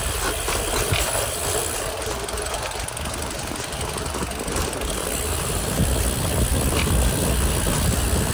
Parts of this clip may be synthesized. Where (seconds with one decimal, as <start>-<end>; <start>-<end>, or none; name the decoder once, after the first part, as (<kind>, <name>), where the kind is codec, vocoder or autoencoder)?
none